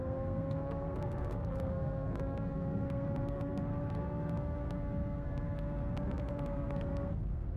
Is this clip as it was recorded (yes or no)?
no